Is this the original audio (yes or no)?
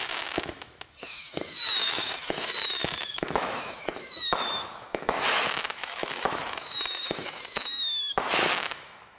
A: no